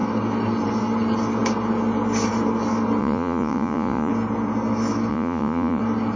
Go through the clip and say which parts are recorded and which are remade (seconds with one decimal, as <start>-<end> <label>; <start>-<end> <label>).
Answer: 0.0-3.0 recorded; 3.0-4.1 remade; 4.1-5.1 recorded; 5.1-5.8 remade; 5.8-6.2 recorded